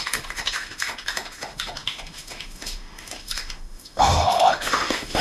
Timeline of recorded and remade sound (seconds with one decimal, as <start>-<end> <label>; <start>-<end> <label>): 0.0-5.2 remade